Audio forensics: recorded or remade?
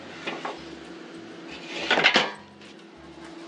recorded